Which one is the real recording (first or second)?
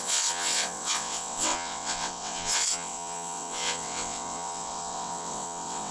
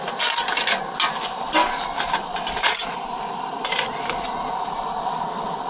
second